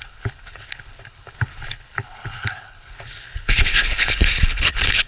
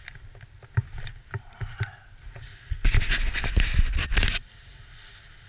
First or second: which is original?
second